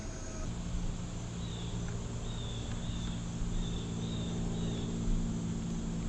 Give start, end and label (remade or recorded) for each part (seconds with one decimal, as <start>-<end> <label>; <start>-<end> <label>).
0.0-6.1 recorded